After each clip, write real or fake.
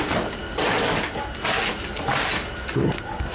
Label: real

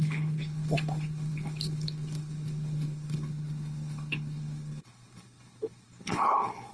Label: fake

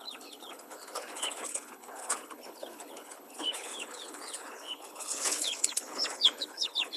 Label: fake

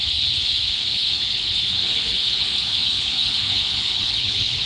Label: fake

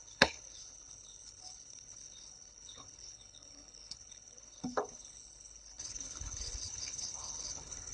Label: fake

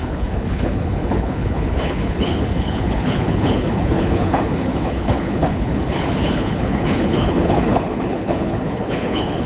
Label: fake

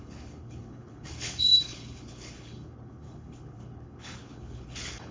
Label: fake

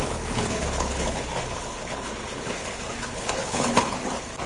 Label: fake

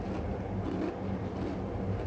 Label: real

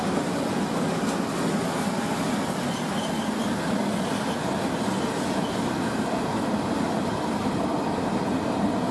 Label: real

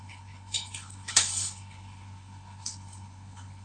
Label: fake